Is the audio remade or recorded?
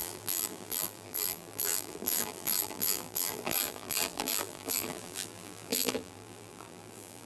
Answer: remade